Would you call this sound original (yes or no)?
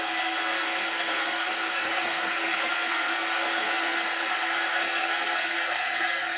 no